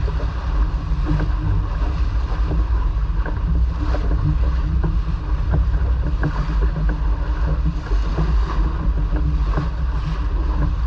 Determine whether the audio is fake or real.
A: real